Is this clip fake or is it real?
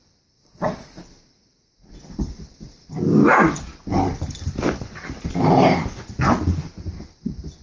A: real